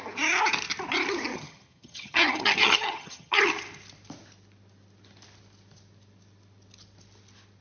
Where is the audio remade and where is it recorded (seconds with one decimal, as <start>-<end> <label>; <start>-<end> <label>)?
0.0-1.3 recorded; 1.3-3.4 remade; 3.4-7.6 recorded